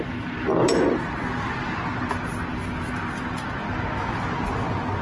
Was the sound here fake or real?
real